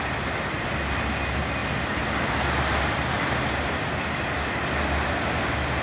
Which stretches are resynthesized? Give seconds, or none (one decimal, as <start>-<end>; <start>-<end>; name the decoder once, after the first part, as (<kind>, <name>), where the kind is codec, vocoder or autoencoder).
none